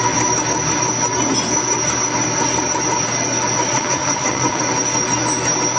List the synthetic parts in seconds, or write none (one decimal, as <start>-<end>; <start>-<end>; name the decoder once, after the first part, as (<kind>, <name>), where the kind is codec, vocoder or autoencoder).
3.7-4.6 (vocoder, WaveNeXt)